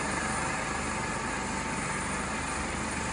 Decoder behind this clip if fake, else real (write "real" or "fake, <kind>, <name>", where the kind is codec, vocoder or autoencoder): real